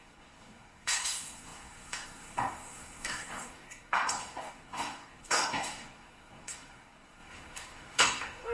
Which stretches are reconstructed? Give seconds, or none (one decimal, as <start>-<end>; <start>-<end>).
0.0-8.5